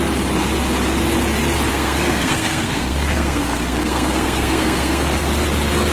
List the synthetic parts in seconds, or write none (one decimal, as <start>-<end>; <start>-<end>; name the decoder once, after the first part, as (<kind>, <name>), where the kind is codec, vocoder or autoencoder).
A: 1.7-5.2 (codec, SNAC)